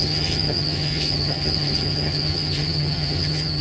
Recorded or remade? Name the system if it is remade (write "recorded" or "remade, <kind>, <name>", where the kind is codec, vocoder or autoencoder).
remade, vocoder, HiFi-GAN